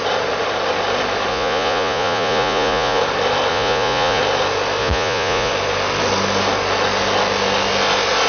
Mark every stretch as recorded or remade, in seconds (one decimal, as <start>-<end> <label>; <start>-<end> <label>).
0.0-1.3 recorded; 1.3-3.0 remade; 3.0-3.5 recorded; 3.5-4.2 remade; 4.2-4.8 recorded; 4.8-5.5 remade; 5.5-8.3 recorded